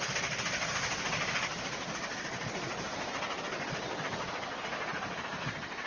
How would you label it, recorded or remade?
recorded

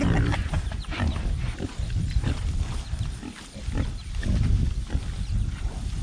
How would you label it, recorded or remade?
recorded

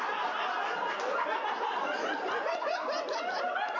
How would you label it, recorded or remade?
recorded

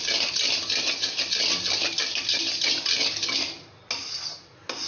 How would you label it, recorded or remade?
recorded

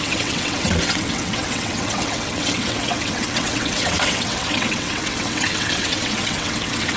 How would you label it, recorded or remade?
remade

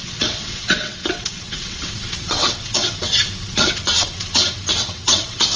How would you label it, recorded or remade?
remade